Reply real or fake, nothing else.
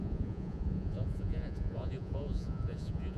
fake